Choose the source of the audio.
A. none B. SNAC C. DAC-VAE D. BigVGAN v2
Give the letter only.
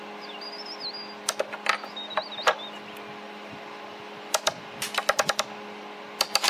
A